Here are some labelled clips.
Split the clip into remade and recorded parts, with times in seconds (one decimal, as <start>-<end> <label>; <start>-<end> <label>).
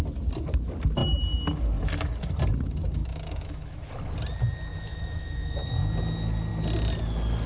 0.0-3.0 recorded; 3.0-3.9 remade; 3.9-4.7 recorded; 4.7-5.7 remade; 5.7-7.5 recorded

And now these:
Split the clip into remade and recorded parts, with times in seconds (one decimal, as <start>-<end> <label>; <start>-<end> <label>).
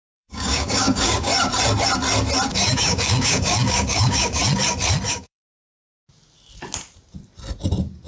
0.0-1.3 remade; 1.3-2.5 recorded; 2.5-4.4 remade; 4.4-5.1 recorded; 5.1-5.9 remade; 5.9-8.1 recorded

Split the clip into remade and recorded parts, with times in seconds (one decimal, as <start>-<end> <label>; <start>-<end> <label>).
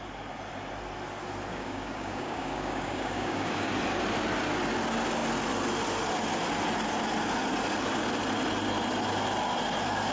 0.0-1.5 recorded; 1.5-3.7 remade; 3.7-10.1 recorded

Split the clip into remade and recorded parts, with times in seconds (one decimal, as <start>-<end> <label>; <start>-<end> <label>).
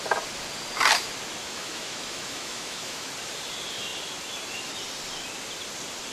0.0-1.4 recorded; 1.4-3.1 remade; 3.1-6.1 recorded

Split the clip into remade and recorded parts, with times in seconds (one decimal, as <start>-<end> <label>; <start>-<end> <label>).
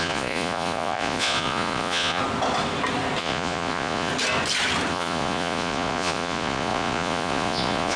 0.0-2.2 remade; 2.2-3.2 recorded; 3.2-4.1 remade; 4.1-4.9 recorded; 4.9-8.0 remade